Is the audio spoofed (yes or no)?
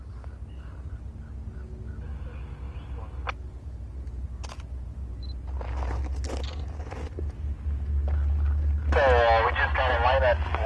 no